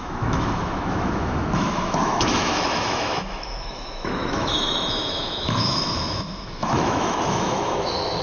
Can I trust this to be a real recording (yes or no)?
no